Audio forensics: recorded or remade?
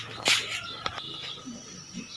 recorded